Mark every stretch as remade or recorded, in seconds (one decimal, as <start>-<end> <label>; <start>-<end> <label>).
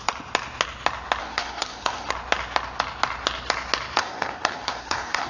0.0-1.2 recorded; 1.2-2.1 remade; 2.1-4.0 recorded; 4.0-5.3 remade